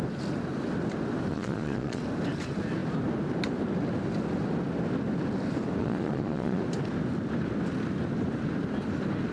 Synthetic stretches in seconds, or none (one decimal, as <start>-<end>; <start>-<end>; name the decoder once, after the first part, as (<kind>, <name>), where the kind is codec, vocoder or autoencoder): 1.3-2.0 (vocoder, Vocos); 5.8-6.6